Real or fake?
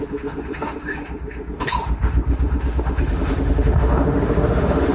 fake